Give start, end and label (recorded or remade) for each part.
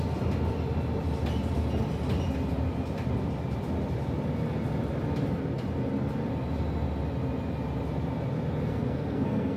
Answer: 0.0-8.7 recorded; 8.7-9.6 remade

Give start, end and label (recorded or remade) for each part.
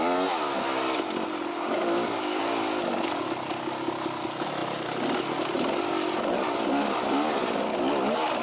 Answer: 0.0-1.5 recorded; 1.5-2.5 remade; 2.5-8.4 recorded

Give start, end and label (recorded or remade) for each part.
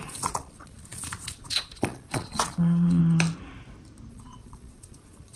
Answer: 0.0-3.0 remade; 3.0-4.1 recorded; 4.1-5.4 remade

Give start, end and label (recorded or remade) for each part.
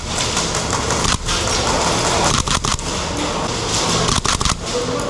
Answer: 0.0-5.1 recorded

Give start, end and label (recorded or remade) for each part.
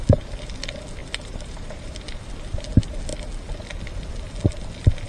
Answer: 0.0-1.0 recorded; 1.0-1.9 remade; 1.9-5.1 recorded